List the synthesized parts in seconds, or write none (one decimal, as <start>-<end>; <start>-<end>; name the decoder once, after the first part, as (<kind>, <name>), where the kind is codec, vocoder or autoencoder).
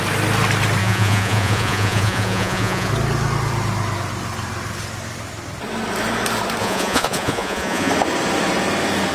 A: 0.8-2.9 (vocoder, Vocos); 6.6-7.9